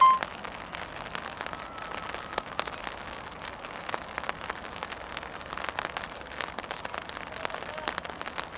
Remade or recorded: recorded